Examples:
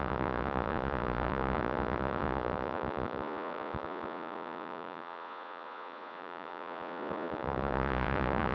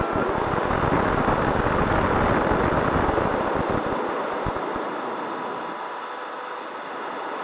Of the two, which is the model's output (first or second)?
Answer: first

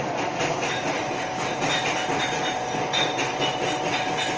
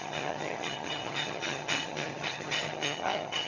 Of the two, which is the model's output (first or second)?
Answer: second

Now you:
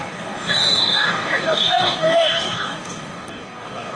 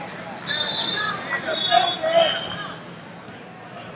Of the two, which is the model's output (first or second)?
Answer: first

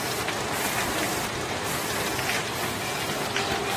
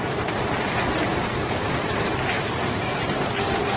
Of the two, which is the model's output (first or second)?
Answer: second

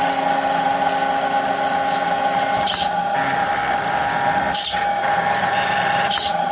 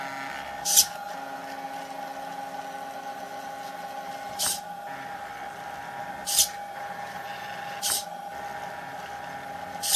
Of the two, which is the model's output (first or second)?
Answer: first